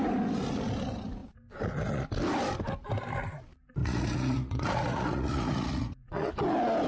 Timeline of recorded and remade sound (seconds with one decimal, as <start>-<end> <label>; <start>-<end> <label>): 0.0-3.8 recorded; 3.8-6.3 remade; 6.3-6.9 recorded